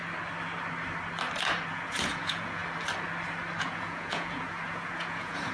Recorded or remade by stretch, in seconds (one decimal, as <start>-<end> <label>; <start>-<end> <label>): 0.0-1.7 recorded; 1.7-2.6 remade; 2.6-3.6 recorded; 3.6-5.5 remade